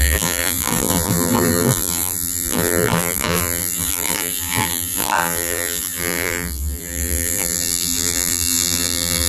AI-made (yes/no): yes